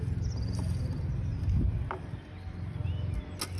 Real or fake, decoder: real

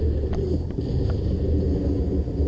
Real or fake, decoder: real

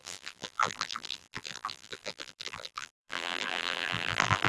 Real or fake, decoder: fake, vocoder, BigVGAN v2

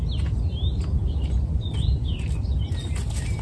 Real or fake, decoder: real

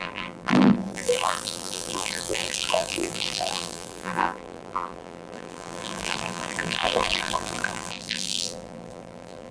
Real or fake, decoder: fake, vocoder, BigVGAN v2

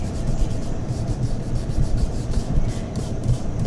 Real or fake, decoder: fake, vocoder, BigVGAN v2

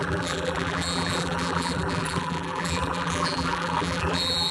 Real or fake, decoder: fake, vocoder, BigVGAN v2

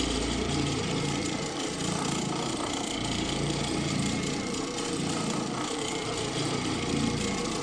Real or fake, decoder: fake, vocoder, BigVGAN v2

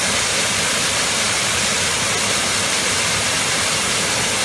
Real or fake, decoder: real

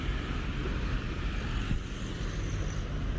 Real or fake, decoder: real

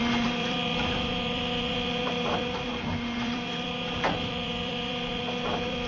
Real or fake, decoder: fake, vocoder, BigVGAN v2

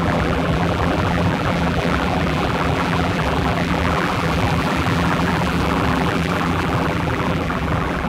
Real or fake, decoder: fake, vocoder, BigVGAN v2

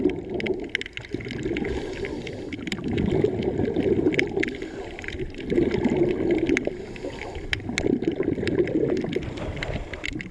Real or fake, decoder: real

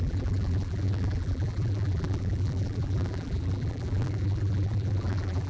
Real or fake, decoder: fake, vocoder, BigVGAN v2